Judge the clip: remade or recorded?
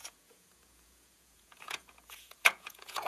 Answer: remade